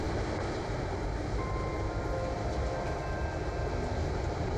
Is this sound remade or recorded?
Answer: recorded